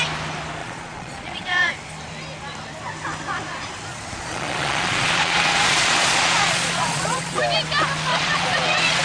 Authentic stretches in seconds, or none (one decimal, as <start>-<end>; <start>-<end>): 0.0-0.6; 1.7-3.9; 7.4-8.1